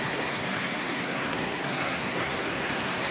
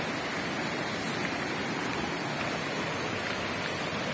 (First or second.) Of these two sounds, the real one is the second